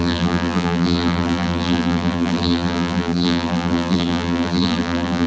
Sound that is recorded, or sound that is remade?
remade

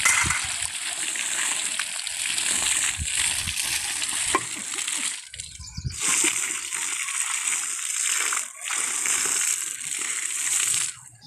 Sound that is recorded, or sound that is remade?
recorded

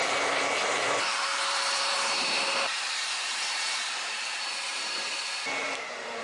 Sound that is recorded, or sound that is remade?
remade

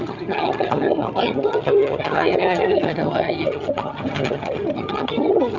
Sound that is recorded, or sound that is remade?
remade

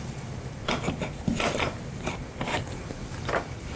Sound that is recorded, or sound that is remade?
remade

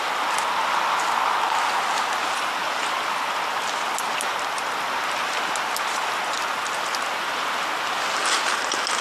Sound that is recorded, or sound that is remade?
recorded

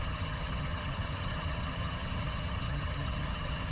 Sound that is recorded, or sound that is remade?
remade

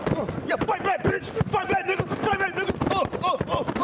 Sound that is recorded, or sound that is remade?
recorded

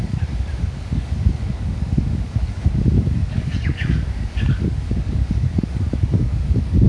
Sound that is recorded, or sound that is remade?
remade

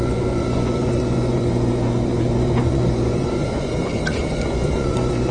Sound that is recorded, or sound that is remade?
remade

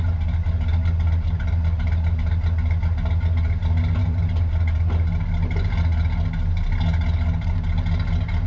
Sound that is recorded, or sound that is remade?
recorded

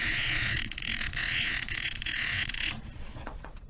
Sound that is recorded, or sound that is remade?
remade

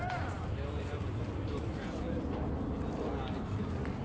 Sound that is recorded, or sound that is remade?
recorded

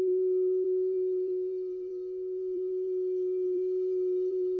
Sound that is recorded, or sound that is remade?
remade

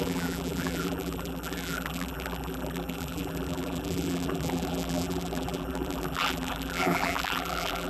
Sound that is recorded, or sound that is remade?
remade